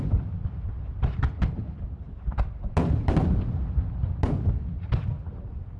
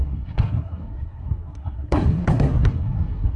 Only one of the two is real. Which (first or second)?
first